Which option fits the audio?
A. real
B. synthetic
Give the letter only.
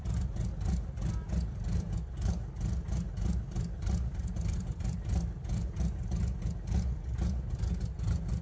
A